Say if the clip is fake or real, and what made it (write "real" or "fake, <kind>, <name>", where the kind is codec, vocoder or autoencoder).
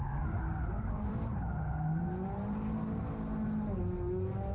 real